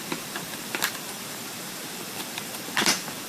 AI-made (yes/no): yes